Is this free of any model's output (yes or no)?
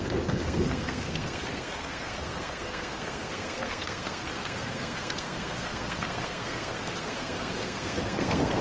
no